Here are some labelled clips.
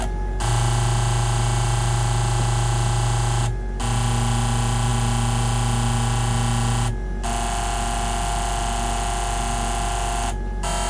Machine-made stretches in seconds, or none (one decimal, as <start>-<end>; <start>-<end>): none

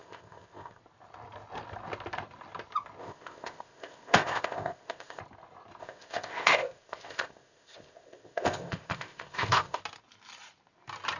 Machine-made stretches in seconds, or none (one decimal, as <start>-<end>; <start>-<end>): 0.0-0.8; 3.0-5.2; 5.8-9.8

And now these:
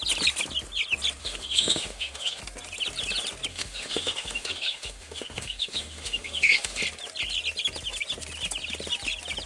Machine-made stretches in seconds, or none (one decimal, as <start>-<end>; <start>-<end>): 1.2-2.4; 3.5-6.8